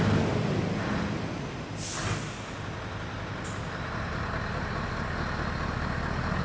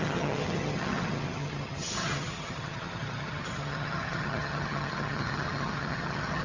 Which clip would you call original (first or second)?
first